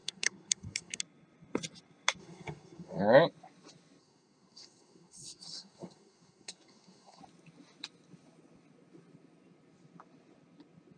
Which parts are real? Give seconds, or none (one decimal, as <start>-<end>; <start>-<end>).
1.0-2.2; 3.0-4.0; 7.2-11.0